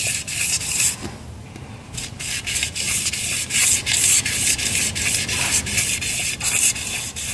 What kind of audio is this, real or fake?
real